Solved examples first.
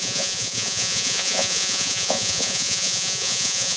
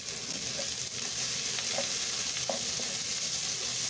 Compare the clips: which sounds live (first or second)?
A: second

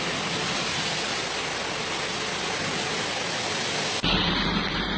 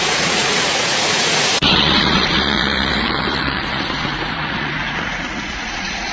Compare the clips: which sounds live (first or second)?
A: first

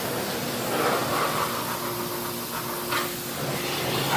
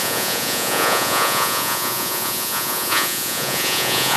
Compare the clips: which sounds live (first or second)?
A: first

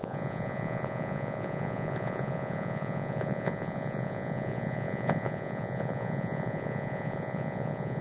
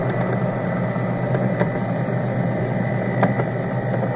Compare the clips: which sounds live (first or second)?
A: second